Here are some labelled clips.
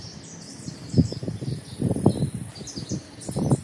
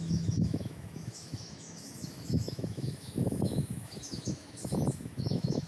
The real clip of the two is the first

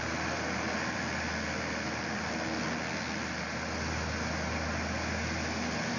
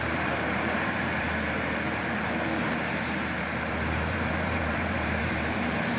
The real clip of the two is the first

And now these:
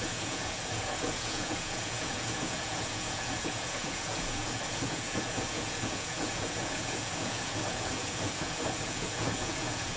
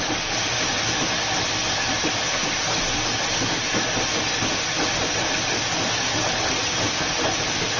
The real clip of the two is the second